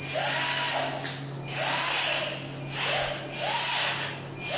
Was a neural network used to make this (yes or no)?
no